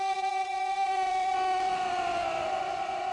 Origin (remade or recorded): remade